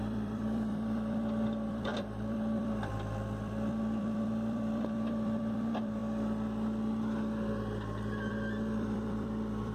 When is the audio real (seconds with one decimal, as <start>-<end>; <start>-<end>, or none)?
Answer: 6.0-8.3